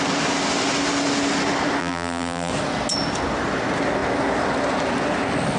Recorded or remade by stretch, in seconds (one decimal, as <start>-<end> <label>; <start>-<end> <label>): 0.0-1.8 recorded; 1.8-2.5 remade; 2.5-5.6 recorded